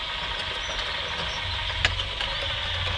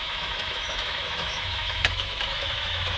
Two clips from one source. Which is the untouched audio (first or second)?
first